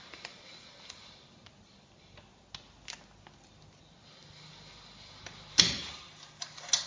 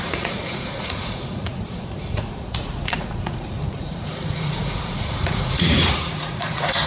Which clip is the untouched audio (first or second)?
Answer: first